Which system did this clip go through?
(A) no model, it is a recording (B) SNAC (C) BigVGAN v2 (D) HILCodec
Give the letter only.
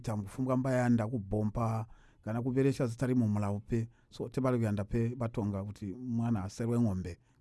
A